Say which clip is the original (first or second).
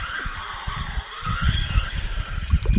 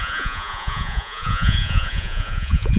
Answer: first